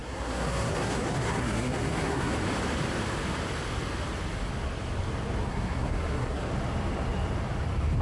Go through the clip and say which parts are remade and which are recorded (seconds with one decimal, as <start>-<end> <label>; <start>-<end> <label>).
0.0-2.3 remade; 2.3-5.5 recorded; 5.5-6.5 remade; 6.5-8.0 recorded